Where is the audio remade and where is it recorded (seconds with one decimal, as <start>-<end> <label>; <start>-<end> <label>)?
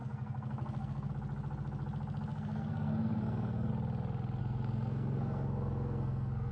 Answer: 0.0-1.1 remade; 1.1-2.3 recorded; 2.3-3.7 remade; 3.7-4.4 recorded; 4.4-6.5 remade